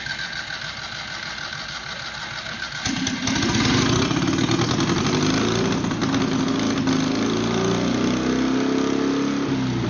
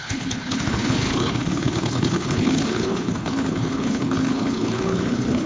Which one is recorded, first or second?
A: first